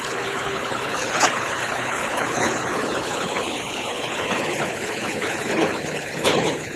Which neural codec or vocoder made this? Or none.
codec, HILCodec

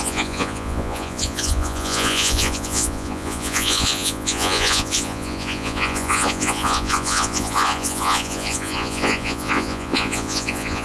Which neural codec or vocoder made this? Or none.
vocoder, Vocos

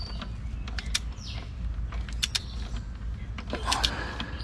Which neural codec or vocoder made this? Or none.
none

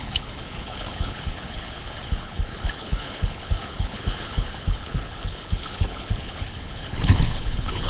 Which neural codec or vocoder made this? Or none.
codec, HILCodec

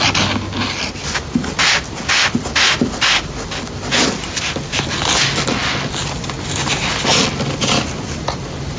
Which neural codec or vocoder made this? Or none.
none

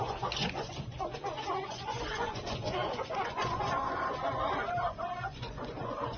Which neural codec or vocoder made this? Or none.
vocoder, Vocos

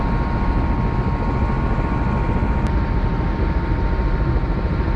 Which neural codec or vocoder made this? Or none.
none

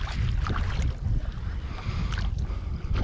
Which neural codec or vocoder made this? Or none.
none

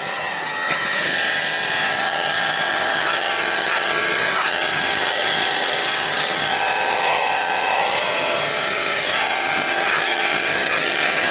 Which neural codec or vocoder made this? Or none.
vocoder, HiFi-GAN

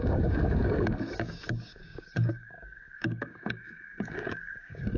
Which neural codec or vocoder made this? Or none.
codec, DAC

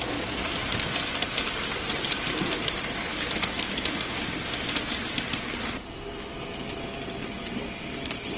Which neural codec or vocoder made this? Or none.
none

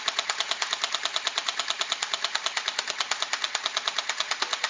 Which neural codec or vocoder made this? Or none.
none